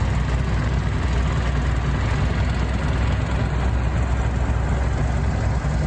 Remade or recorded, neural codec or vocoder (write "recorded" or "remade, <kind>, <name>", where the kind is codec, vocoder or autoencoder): recorded